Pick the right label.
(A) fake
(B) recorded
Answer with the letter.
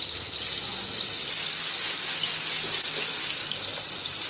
B